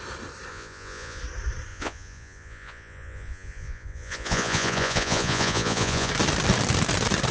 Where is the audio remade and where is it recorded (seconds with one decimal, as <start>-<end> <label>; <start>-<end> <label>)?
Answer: 0.0-0.5 recorded; 0.5-1.2 remade; 1.2-1.7 recorded; 1.7-6.1 remade; 6.1-7.3 recorded